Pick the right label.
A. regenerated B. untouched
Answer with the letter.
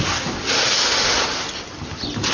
B